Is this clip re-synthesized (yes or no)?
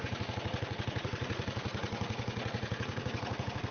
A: yes